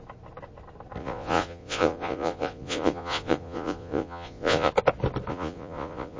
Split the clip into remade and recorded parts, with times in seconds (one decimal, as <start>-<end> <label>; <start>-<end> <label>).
0.0-1.0 recorded; 1.0-4.7 remade; 4.7-5.3 recorded; 5.3-6.2 remade